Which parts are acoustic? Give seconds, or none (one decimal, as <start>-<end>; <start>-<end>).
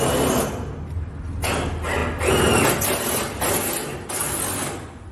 0.0-5.1